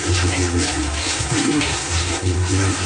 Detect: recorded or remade remade